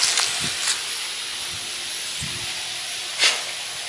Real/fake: real